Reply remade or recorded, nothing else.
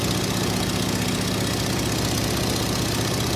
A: recorded